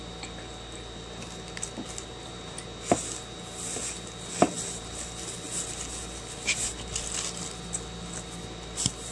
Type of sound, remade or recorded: recorded